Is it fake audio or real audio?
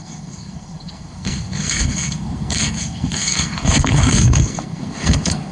fake